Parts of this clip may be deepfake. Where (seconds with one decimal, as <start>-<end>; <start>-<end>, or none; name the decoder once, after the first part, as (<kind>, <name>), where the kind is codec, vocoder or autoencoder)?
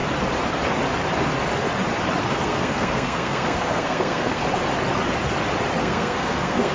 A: 2.2-4.4 (codec, SNAC); 5.8-6.7